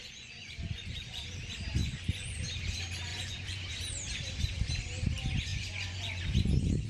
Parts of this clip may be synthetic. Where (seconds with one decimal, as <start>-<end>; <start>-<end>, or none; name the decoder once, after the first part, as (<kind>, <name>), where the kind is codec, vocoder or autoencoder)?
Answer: 0.0-1.2 (vocoder, Vocos); 1.8-2.4; 3.1-3.7; 5.5-6.2